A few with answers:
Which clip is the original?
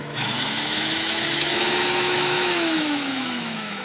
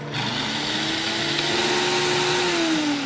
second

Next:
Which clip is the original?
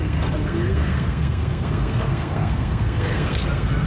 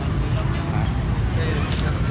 second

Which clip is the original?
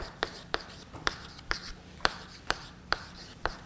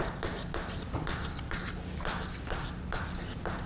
second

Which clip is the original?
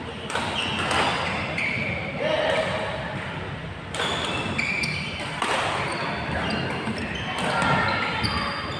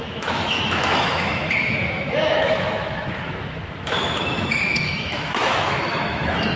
first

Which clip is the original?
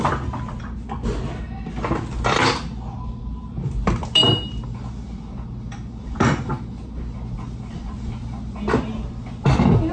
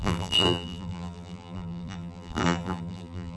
first